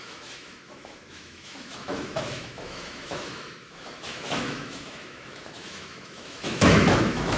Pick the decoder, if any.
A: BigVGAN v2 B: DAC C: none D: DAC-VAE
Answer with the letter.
D